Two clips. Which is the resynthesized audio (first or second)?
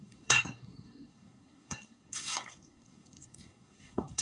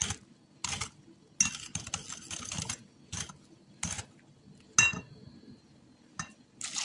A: first